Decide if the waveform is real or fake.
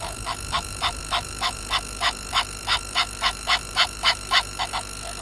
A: fake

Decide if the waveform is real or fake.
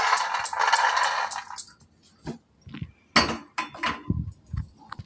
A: real